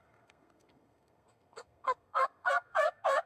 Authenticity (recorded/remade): remade